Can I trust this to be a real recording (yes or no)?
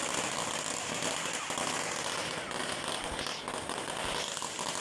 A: yes